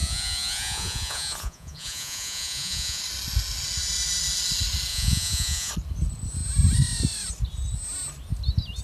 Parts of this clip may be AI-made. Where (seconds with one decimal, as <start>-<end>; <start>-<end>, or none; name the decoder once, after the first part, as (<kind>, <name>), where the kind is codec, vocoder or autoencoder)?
0.0-3.0 (vocoder, Vocos); 4.9-5.7